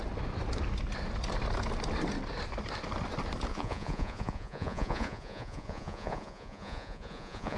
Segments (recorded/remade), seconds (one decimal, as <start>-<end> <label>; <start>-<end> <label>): 0.0-3.5 recorded; 3.5-7.6 remade